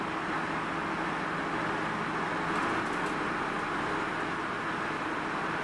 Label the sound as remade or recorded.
recorded